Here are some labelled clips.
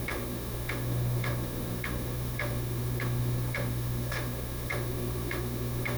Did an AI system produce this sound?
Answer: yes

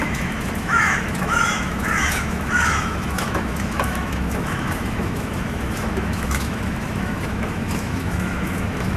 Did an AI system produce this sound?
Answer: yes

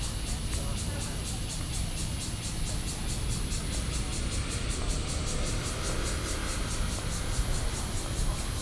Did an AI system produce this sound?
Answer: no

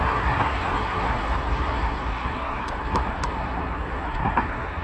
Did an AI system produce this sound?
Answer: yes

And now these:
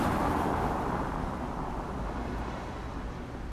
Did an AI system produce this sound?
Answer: no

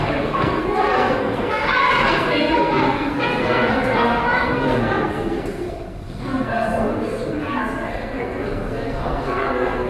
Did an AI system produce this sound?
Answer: yes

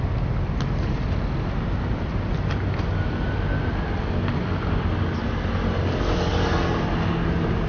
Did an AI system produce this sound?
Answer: no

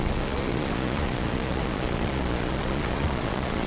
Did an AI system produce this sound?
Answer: yes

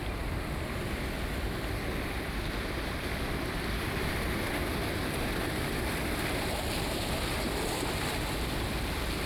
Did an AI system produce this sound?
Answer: no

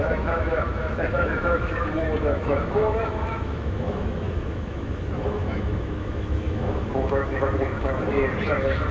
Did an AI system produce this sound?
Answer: yes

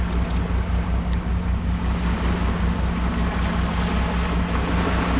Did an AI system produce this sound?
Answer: no